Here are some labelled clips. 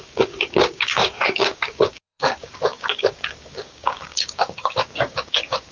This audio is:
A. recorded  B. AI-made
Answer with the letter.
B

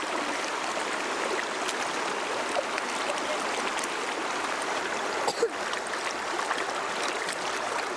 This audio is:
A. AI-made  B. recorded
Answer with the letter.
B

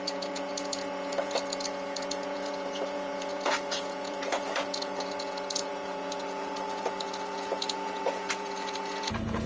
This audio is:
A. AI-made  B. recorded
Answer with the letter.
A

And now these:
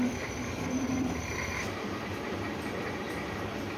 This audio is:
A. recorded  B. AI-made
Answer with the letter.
B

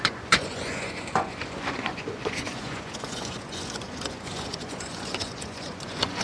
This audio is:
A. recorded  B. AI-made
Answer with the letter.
B